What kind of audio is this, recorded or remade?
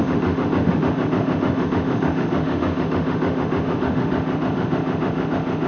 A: remade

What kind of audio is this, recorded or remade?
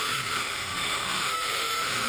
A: remade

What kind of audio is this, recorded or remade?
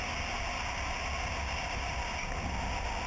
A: recorded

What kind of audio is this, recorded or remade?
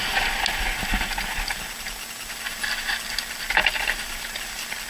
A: recorded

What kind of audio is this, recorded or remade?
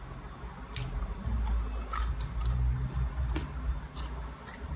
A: recorded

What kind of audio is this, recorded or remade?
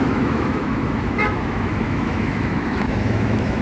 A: remade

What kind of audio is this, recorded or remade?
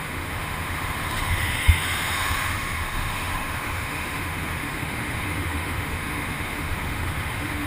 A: remade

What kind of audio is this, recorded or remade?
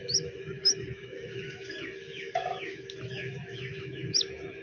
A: remade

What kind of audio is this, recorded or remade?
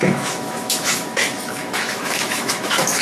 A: remade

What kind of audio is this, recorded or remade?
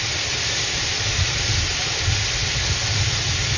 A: recorded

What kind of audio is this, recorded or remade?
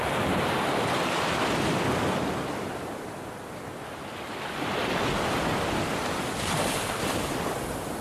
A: recorded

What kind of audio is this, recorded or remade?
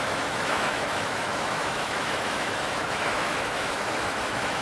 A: remade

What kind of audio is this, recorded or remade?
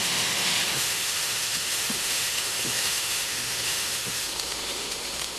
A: remade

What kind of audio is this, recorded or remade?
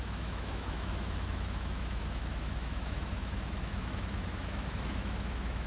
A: remade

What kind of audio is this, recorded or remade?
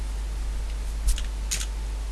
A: recorded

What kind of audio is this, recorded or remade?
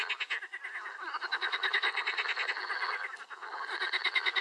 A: recorded